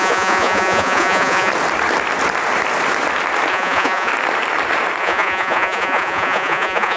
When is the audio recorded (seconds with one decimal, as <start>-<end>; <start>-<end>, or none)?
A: 1.5-3.5; 4.1-5.0